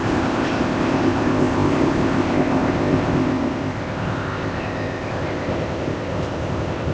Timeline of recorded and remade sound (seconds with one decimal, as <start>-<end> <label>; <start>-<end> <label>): 0.0-6.9 remade